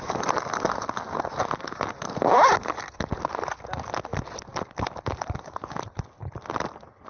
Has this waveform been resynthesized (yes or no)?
no